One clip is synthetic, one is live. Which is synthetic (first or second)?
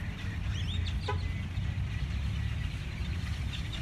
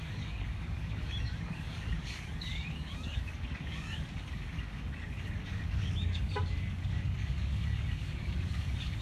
second